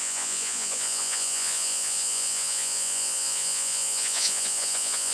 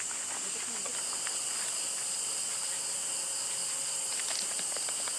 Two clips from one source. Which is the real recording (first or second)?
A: second